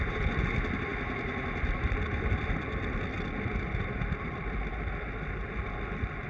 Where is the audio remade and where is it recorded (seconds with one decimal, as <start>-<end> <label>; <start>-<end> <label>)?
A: 0.0-6.3 recorded